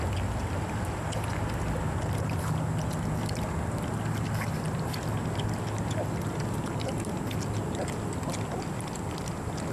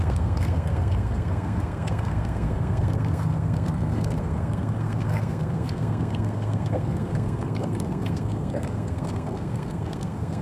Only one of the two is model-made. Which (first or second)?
second